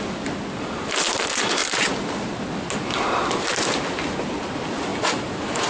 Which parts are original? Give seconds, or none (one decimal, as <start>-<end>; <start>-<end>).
0.0-4.9